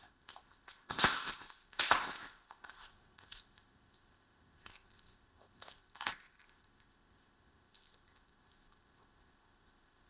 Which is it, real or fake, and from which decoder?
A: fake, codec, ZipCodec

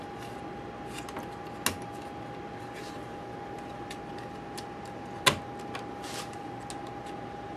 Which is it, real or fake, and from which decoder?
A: real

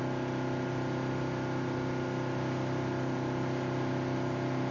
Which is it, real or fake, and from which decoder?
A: real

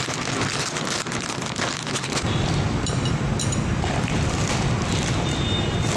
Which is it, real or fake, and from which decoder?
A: real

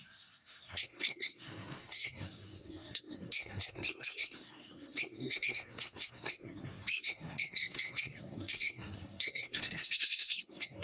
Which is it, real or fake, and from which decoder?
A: fake, codec, SNAC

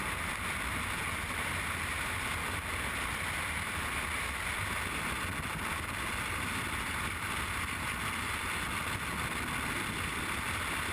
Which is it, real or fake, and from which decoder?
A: real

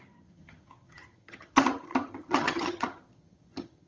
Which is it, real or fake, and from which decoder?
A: fake, vocoder, HiFi-GAN